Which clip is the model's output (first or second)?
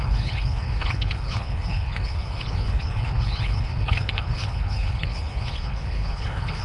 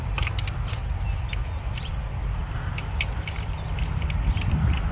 first